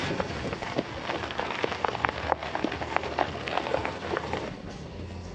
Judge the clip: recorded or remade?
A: remade